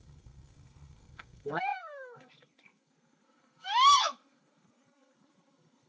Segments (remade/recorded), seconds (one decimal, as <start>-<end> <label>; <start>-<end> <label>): 0.0-5.9 remade